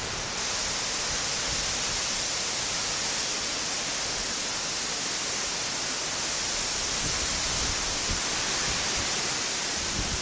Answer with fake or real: real